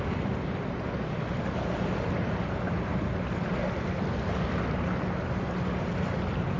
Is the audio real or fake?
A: real